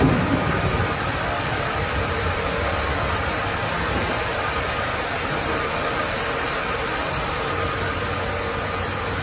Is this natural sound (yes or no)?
no